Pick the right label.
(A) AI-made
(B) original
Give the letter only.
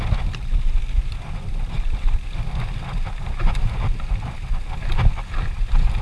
B